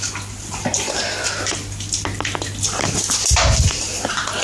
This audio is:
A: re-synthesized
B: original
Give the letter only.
B